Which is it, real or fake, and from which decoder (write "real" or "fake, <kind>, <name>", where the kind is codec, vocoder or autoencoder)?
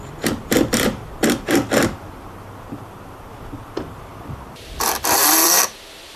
fake, vocoder, BigVGAN v2